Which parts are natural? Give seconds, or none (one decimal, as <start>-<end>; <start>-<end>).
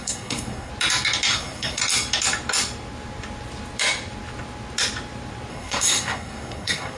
0.7-1.3; 1.8-5.5